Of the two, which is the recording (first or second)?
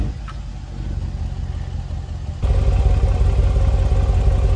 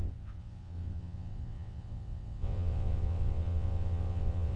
first